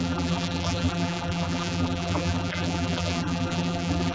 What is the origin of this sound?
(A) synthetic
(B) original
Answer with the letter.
A